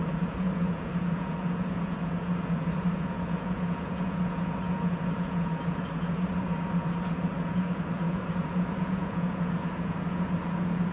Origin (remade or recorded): remade